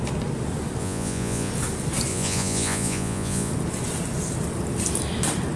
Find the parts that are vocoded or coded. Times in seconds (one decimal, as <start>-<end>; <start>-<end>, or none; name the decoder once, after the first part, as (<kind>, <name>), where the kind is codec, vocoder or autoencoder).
0.8-1.5 (vocoder, Vocos); 2.1-3.5